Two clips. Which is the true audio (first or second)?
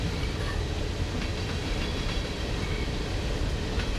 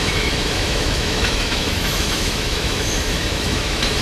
first